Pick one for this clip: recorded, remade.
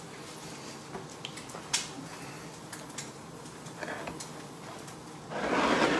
recorded